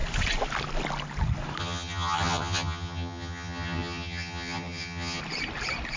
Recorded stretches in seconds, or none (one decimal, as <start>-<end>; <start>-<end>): 0.0-1.6; 5.2-6.0